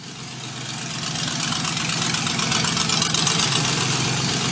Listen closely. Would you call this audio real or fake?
real